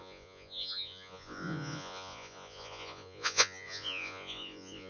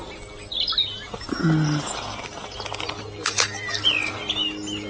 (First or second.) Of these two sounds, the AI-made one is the first